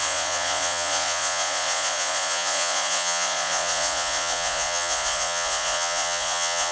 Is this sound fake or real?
fake